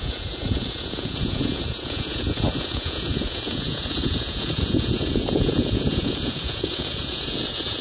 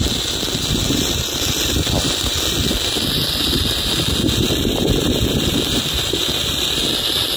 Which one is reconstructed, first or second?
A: first